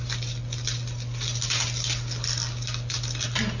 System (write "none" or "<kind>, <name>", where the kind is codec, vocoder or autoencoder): none